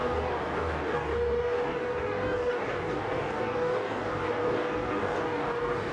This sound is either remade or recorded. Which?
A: remade